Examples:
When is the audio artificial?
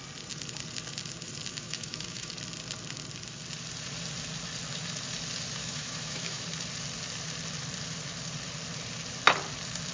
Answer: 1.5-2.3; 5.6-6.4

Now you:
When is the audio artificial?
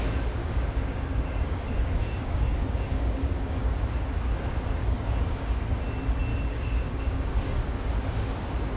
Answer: 0.4-3.8; 4.8-5.8; 6.3-8.3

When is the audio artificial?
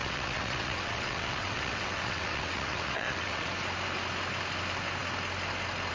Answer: 0.0-3.5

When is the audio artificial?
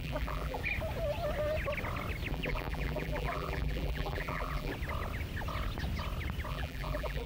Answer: 0.0-0.6; 2.3-4.7; 6.5-7.3